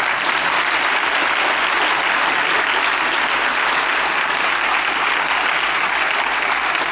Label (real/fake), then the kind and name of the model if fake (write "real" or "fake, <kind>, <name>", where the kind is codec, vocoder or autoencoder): real